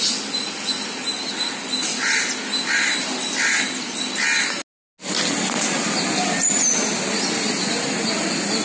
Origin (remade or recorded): recorded